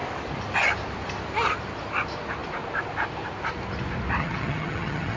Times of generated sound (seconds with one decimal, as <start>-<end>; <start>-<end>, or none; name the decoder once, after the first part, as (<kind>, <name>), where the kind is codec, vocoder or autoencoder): 4.2-5.2 (vocoder, HiFi-GAN)